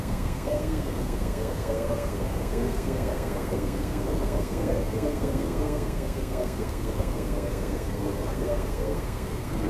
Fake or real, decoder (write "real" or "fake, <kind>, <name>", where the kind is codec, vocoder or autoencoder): fake, codec, SNAC